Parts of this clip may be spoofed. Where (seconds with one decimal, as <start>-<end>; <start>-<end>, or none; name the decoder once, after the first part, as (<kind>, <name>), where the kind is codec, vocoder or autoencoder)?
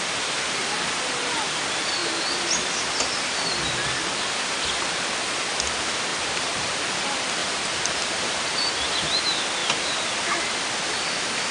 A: 6.1-6.8 (vocoder, BigVGAN v2); 7.4-9.2; 9.6-10.4